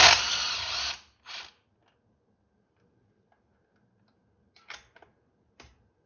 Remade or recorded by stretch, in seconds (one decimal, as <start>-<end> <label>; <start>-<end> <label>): 0.0-6.1 recorded